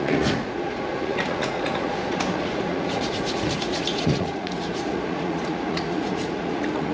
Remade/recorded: remade